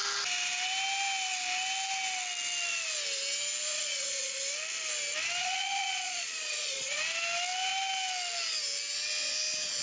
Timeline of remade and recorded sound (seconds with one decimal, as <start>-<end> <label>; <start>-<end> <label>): 0.0-3.7 recorded; 3.7-4.4 remade; 4.4-5.4 recorded; 5.4-7.0 remade; 7.0-9.8 recorded